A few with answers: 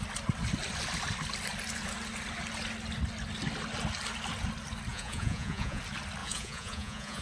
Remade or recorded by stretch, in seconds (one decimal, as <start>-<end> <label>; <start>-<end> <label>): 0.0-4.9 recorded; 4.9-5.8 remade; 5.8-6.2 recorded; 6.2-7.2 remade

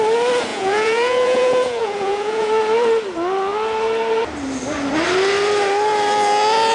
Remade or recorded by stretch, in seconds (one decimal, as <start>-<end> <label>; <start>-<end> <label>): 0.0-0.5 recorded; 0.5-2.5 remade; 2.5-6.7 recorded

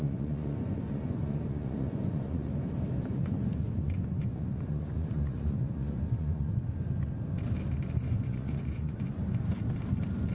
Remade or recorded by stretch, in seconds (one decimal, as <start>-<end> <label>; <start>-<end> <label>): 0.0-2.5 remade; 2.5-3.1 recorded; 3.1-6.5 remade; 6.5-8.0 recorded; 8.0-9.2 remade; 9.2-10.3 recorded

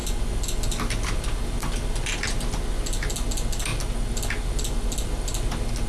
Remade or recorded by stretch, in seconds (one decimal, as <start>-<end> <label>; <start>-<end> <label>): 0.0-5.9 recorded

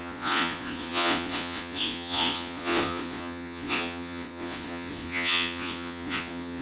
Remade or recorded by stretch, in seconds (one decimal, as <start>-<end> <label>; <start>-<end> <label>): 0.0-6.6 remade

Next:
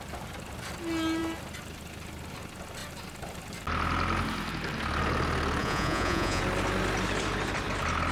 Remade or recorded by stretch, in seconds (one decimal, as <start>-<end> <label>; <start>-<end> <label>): 0.0-5.6 recorded; 5.6-6.4 remade; 6.4-8.1 recorded